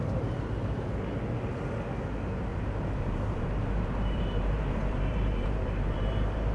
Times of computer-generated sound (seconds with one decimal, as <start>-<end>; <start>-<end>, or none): 2.5-6.5